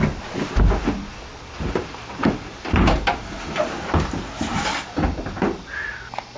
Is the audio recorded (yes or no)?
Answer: yes